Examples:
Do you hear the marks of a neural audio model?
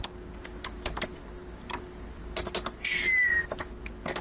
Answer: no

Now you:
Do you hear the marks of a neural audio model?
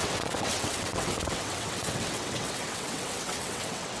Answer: yes